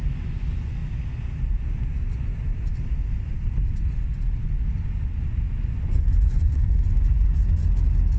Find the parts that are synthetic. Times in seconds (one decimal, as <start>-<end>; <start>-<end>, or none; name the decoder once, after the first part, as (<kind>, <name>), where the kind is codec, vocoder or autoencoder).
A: 0.0-0.8 (vocoder, Vocos); 5.7-7.4